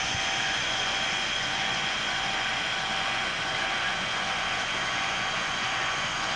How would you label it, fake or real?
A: fake